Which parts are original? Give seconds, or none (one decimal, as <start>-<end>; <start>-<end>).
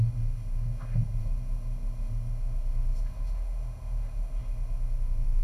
none